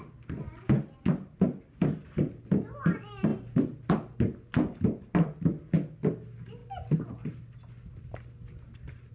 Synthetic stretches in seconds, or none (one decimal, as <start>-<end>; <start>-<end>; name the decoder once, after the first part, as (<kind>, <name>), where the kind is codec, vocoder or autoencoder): none